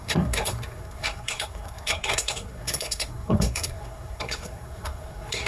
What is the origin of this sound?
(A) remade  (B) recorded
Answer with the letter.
A